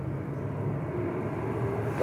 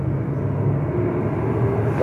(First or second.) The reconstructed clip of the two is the first